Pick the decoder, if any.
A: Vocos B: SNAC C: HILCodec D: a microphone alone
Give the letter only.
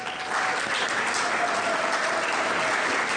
D